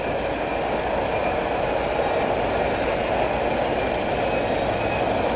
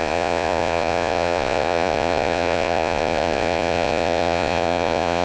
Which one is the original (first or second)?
first